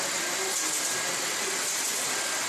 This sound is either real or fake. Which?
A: real